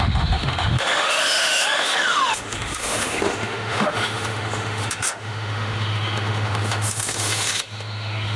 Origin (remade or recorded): remade